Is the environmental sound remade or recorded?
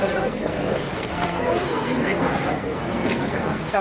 remade